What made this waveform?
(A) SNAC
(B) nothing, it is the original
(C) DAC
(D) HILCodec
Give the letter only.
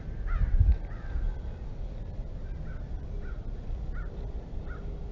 B